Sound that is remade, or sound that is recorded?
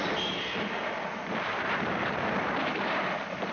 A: recorded